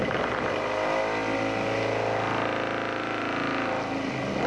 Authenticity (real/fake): real